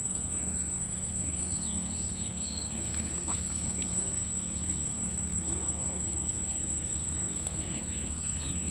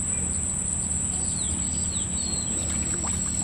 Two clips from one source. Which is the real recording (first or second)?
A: second